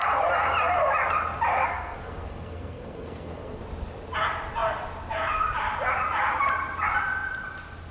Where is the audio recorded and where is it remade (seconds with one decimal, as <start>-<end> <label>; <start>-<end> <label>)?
0.0-1.7 recorded; 1.7-3.6 remade; 3.6-7.9 recorded